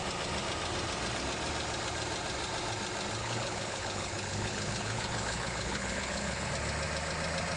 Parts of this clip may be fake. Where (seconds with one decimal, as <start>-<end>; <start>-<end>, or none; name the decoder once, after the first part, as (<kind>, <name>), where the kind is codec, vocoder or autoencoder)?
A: 3.2-6.5 (codec, HILCodec)